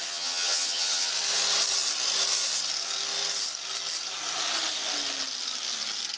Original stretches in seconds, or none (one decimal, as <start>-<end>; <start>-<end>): 1.1-6.2